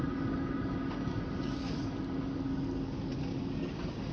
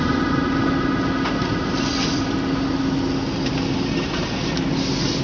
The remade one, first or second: first